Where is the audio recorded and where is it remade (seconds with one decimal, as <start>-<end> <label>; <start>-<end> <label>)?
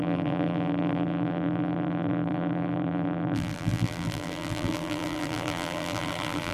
0.0-6.5 remade